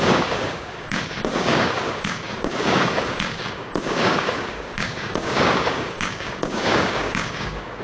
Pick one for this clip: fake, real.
fake